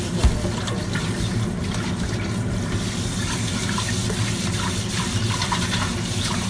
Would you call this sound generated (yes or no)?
no